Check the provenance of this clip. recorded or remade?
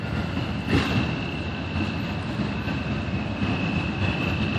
recorded